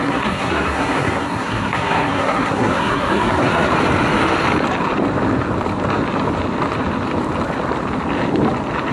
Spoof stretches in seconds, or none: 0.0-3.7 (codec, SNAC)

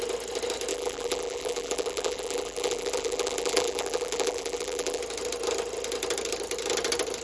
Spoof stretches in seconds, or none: 0.7-5.0 (vocoder, BigVGAN v2)

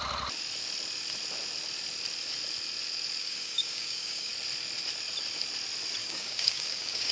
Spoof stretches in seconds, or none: 3.2-4.3 (codec, DAC); 6.0-7.1

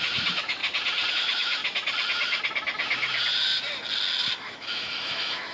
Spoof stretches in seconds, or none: 0.0-0.6 (autoencoder, DAC-VAE); 1.1-1.6; 4.4-5.5

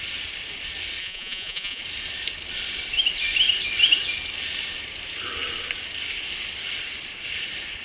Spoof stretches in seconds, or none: 1.0-1.8 (vocoder, Vocos)

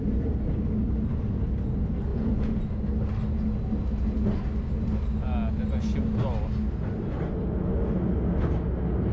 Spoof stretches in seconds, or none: 2.1-2.6 (vocoder, Vocos)

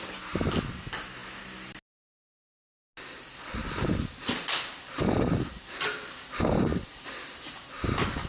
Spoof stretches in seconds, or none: 3.6-4.3 (vocoder, BigVGAN v2); 6.7-7.9